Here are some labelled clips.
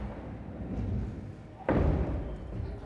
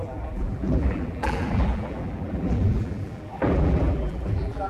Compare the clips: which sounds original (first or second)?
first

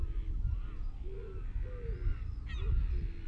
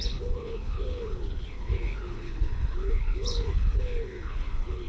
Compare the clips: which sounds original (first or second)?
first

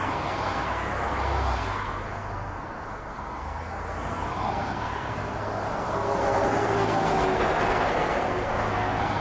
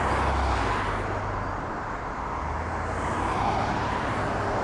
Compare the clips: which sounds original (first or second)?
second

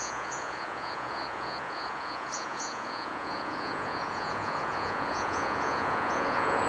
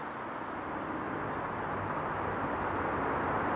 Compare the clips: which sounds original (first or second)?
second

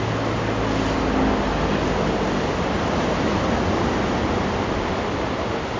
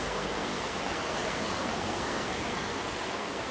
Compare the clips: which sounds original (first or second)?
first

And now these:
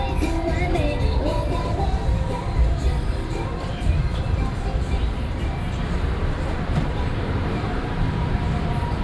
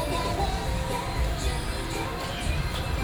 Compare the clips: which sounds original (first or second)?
second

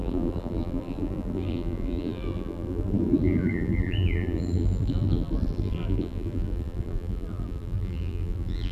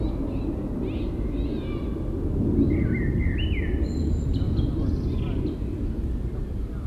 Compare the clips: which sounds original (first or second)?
second